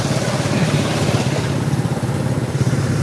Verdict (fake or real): real